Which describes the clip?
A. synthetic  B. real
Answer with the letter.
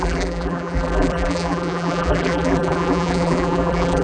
A